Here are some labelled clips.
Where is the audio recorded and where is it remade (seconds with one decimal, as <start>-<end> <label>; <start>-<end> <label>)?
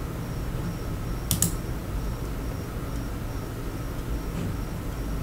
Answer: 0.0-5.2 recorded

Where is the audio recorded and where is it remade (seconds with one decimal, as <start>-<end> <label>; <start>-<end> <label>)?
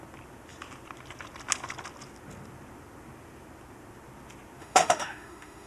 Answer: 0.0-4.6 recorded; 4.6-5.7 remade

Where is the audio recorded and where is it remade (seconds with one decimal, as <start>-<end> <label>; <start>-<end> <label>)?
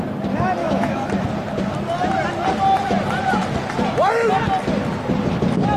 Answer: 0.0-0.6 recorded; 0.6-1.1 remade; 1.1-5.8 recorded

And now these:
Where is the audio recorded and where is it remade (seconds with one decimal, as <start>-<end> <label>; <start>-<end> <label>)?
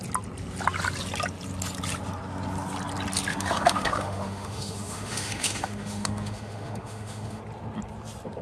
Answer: 0.0-3.3 recorded; 3.3-7.4 remade; 7.4-8.4 recorded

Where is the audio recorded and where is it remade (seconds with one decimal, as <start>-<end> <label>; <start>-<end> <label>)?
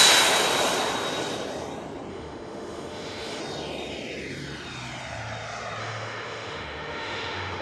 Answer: 0.0-2.1 recorded; 2.1-3.4 remade; 3.4-5.8 recorded; 5.8-7.6 remade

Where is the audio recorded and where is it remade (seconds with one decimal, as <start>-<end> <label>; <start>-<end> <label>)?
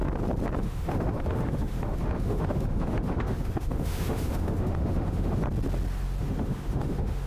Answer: 0.0-0.6 recorded; 0.6-5.4 remade; 5.4-6.2 recorded; 6.2-7.3 remade